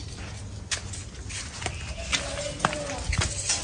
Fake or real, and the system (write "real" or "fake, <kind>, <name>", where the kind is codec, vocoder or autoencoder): real